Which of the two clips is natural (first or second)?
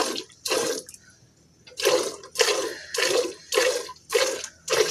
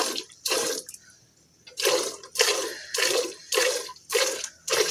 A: first